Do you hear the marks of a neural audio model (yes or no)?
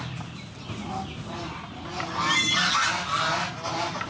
no